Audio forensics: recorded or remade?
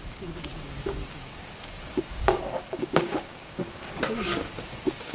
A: remade